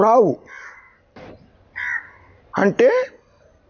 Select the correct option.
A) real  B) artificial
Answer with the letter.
A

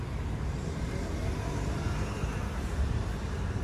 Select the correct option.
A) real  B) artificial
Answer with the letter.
B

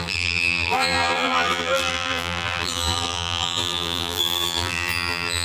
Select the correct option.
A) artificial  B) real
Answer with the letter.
A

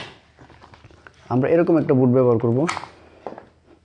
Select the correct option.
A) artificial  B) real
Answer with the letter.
B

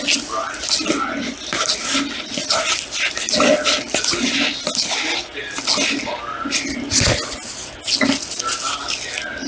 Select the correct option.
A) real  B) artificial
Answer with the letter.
A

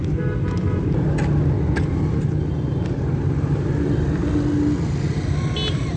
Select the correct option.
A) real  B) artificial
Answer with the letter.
A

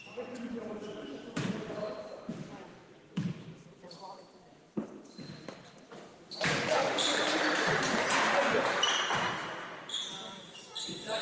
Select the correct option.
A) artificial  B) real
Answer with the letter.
A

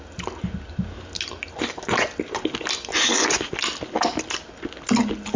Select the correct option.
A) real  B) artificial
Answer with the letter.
A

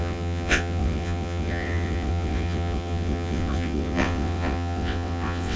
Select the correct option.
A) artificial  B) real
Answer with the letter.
A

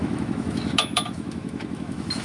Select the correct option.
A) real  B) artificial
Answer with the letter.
B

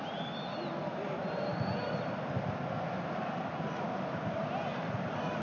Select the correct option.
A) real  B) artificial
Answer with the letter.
A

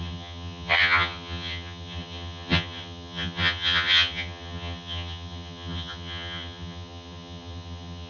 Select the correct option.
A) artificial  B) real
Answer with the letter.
A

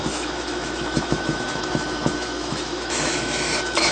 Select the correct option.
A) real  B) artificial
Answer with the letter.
B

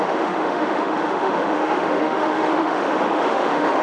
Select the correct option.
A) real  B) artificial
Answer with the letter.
B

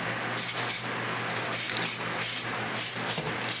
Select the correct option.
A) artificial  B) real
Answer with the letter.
B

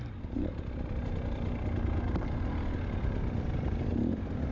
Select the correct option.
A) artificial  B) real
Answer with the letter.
B